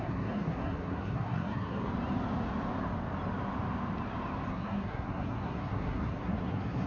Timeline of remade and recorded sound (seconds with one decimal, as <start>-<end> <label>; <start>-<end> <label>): 0.0-1.9 remade; 1.9-4.5 recorded; 4.5-6.9 remade